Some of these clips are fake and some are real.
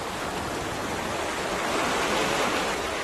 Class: real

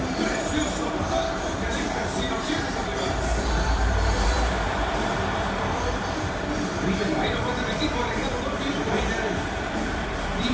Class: fake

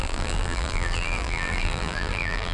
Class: fake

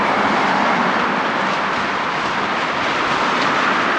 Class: real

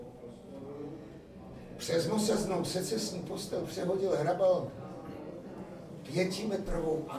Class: real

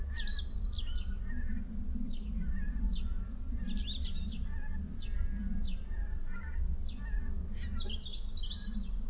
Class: real